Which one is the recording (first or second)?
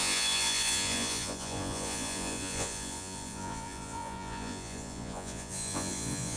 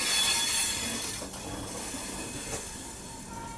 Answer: second